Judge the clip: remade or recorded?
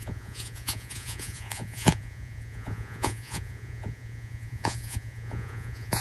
remade